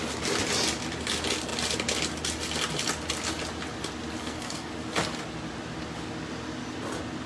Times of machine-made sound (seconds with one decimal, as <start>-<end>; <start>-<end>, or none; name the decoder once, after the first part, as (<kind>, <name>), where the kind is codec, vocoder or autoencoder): 4.2-4.7 (codec, SNAC)